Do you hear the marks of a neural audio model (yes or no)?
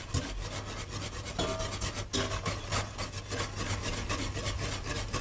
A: no